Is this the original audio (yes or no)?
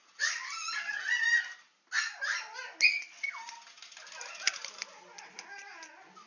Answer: yes